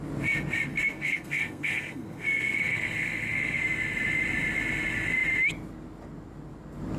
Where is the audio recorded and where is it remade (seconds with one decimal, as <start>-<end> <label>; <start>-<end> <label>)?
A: 0.0-0.7 recorded; 0.7-3.6 remade; 3.6-7.0 recorded